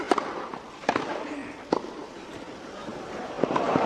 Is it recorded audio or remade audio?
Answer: recorded